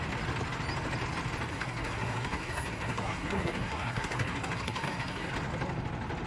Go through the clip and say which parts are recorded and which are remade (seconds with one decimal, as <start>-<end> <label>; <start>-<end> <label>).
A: 0.0-1.5 recorded; 1.5-5.3 remade; 5.3-6.3 recorded